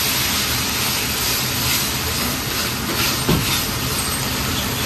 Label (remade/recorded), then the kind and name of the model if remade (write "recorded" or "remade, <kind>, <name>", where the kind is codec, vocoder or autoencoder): recorded